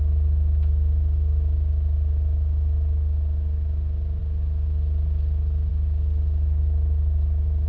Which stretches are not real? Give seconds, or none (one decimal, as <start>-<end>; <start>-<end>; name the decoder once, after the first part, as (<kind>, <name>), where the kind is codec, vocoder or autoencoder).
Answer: none